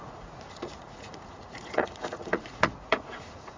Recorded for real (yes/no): no